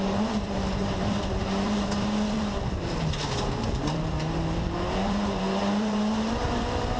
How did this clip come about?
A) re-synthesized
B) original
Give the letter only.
A